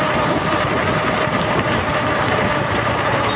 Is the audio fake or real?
fake